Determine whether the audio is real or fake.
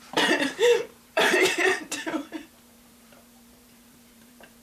fake